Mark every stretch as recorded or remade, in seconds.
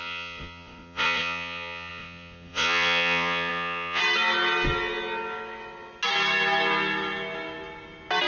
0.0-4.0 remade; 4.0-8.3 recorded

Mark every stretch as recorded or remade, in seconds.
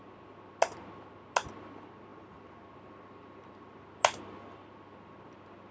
0.0-5.7 recorded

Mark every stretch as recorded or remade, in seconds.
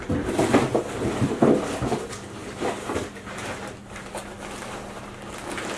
0.0-2.4 recorded; 2.4-4.1 remade; 4.1-5.8 recorded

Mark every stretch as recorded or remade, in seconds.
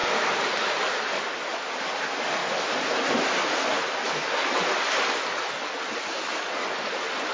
0.0-1.6 remade; 1.6-7.3 recorded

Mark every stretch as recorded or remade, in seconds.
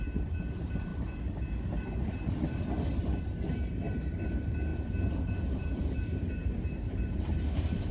0.0-0.9 remade; 0.9-3.0 recorded; 3.0-4.7 remade; 4.7-5.4 recorded; 5.4-7.9 remade